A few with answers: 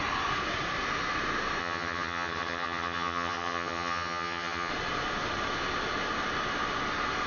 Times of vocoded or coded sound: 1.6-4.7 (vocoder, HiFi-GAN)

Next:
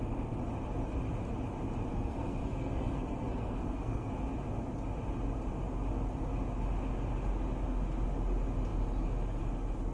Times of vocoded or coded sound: 1.9-4.1 (codec, SNAC)

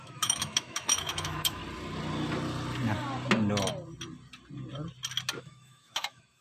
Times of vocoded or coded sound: 0.0-1.6 (autoencoder, DAC-VAE); 5.4-6.4

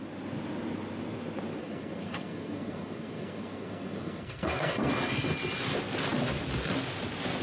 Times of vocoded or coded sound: 1.6-4.9 (codec, SNAC)

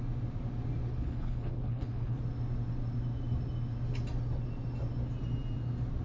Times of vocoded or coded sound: 0.9-2.2 (codec, HILCodec)

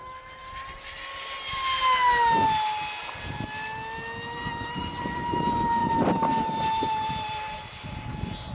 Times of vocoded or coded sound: 5.8-7.6 (vocoder, BigVGAN v2)

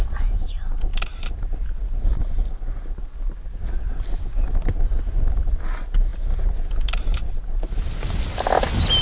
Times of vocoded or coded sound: none

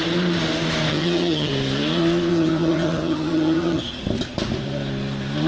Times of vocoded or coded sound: 0.9-1.5 (vocoder, HiFi-GAN); 2.3-3.8